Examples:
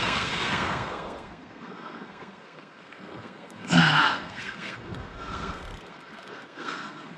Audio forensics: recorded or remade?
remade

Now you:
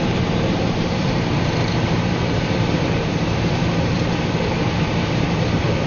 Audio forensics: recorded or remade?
remade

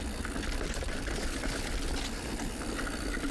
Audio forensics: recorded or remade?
recorded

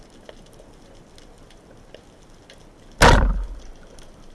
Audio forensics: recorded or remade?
recorded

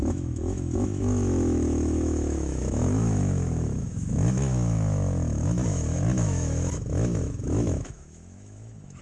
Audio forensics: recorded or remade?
remade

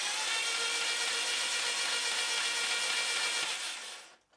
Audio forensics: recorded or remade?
recorded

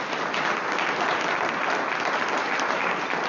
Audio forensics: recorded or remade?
recorded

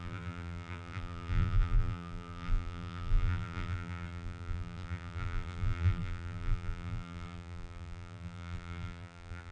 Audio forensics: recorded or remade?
remade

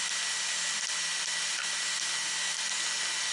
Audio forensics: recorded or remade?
recorded